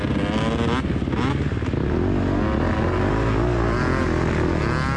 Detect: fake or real real